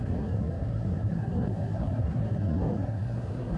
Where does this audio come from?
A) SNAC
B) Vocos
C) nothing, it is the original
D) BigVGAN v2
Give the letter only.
A